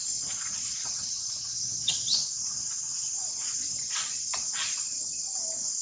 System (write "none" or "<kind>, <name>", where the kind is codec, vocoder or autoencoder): vocoder, Vocos